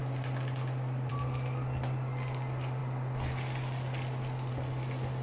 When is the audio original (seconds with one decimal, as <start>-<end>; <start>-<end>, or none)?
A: 0.0-5.2